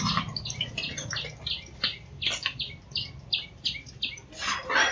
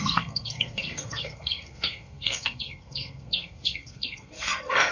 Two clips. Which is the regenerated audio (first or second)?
second